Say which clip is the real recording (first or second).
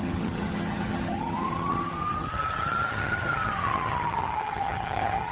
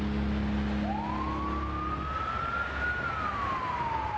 second